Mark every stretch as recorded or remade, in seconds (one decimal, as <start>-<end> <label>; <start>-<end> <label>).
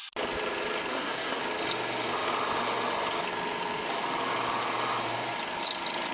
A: 0.0-0.9 recorded; 0.9-1.4 remade; 1.4-6.1 recorded